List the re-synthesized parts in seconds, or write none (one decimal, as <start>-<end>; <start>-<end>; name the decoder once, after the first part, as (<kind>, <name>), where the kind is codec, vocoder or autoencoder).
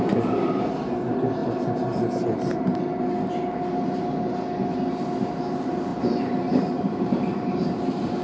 5.9-8.2 (vocoder, BigVGAN v2)